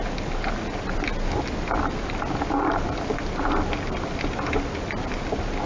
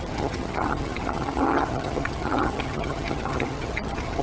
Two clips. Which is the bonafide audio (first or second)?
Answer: first